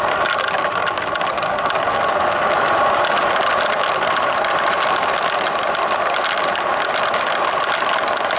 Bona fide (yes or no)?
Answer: yes